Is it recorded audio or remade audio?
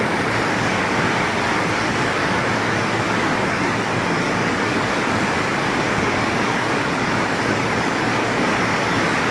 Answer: remade